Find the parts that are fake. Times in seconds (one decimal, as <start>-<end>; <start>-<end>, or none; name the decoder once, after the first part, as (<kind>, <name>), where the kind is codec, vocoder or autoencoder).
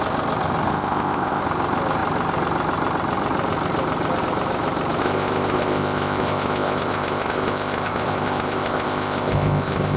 0.7-1.4 (codec, ZipCodec); 5.0-10.0